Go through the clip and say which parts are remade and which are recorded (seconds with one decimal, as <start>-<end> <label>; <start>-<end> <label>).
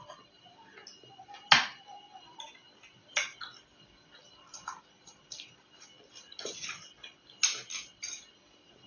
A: 0.0-8.9 recorded